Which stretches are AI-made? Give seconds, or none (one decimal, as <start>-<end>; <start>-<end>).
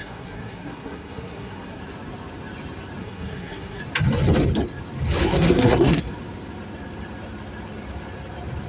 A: 0.0-1.8; 3.0-3.8; 5.2-6.0